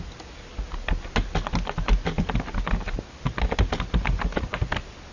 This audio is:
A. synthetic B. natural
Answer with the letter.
B